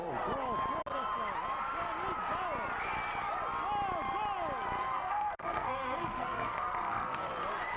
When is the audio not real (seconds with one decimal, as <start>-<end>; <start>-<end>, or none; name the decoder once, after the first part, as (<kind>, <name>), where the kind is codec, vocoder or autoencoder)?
4.8-7.3 (codec, SNAC)